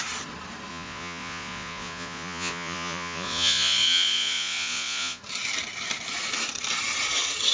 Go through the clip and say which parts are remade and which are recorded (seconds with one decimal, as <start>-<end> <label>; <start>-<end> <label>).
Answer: 0.0-0.7 recorded; 0.7-5.2 remade; 5.2-7.5 recorded